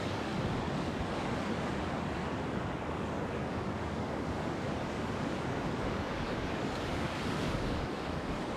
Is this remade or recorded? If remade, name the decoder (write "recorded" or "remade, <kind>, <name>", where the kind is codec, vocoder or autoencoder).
remade, codec, DAC